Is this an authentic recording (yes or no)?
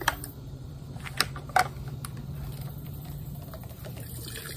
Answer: no